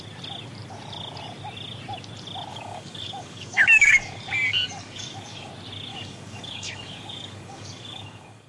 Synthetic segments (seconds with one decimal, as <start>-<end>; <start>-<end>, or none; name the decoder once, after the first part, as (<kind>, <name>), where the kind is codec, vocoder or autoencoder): 2.5-5.5 (codec, DAC); 5.9-8.5